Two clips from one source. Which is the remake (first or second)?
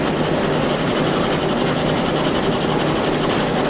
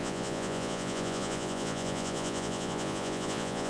second